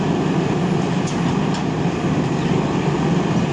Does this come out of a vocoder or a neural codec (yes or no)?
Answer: no